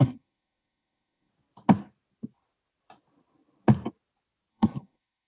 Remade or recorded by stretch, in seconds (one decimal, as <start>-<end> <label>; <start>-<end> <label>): 0.0-1.3 remade; 1.3-4.5 recorded; 4.5-5.3 remade